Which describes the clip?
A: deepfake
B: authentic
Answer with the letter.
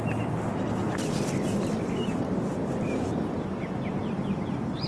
B